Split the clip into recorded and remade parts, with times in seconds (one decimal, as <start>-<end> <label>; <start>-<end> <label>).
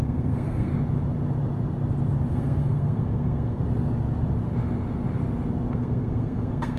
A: 0.0-0.7 remade; 0.7-2.3 recorded; 2.3-3.6 remade; 3.6-5.7 recorded; 5.7-6.8 remade